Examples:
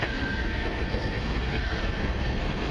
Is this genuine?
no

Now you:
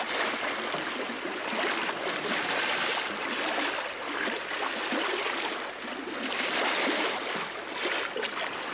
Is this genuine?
yes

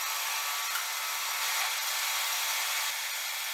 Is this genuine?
yes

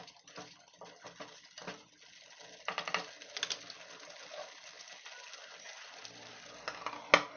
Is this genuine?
yes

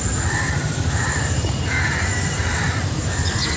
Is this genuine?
no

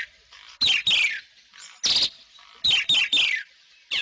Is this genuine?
yes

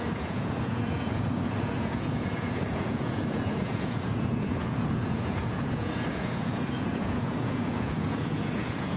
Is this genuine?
no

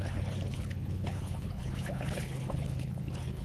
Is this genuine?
no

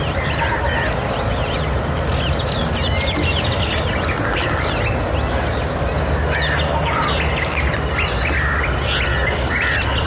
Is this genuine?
yes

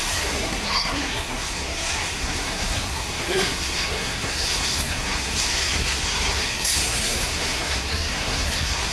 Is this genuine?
no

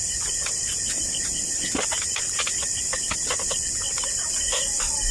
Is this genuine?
yes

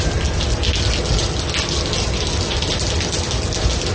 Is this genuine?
yes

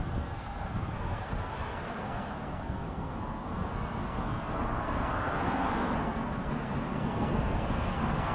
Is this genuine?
no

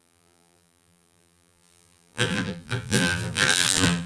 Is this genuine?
no